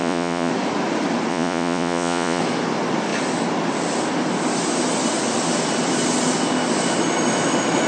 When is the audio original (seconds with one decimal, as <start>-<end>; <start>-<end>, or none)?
0.5-1.3; 2.4-7.9